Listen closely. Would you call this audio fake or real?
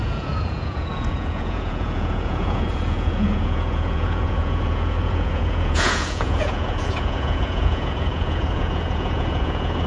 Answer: fake